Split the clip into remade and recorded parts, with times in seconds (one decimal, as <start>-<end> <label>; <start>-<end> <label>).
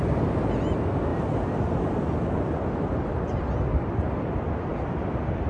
0.0-5.5 recorded